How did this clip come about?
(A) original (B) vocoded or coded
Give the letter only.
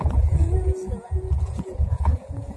B